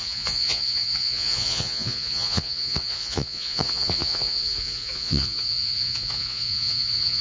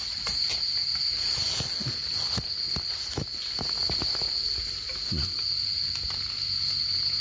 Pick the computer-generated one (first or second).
first